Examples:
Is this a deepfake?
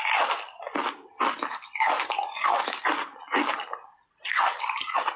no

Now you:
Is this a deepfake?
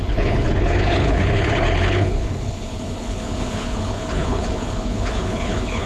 yes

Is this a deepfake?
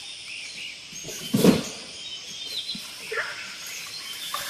no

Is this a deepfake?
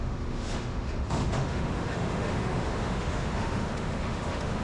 yes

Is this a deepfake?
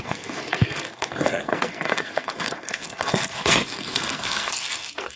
yes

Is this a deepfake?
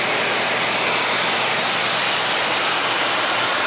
no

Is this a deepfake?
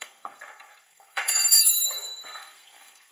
yes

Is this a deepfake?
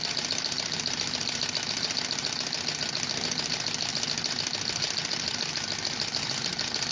no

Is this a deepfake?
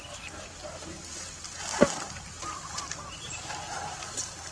no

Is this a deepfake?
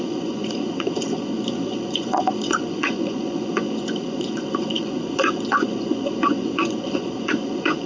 yes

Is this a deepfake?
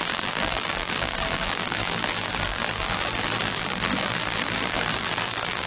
yes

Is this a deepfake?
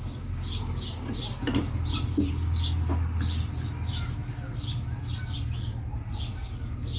no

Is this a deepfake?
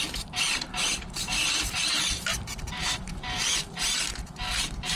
yes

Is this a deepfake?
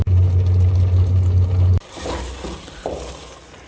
no